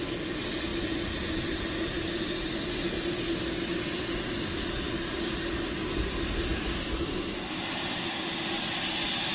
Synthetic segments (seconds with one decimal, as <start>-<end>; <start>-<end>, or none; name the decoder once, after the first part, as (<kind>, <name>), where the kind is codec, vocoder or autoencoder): 0.7-1.7 (vocoder, BigVGAN v2)